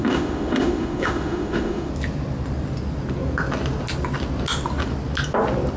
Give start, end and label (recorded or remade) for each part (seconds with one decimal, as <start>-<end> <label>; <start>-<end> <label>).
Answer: 0.0-1.9 remade; 1.9-5.8 recorded